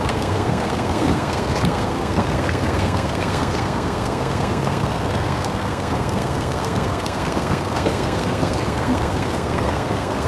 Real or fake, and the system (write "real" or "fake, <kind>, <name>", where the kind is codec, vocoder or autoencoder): fake, codec, SNAC